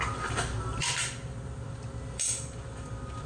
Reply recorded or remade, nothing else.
recorded